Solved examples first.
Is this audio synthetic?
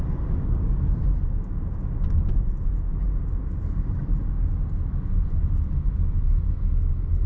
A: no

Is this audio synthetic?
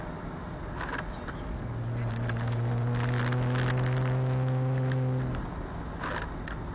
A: no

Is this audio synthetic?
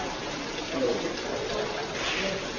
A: no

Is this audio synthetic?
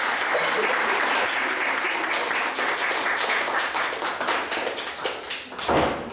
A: no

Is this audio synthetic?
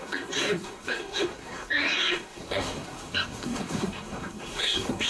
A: yes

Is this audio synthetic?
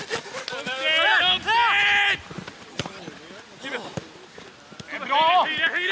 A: no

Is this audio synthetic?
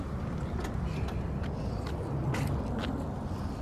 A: no